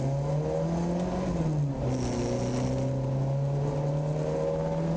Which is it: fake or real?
real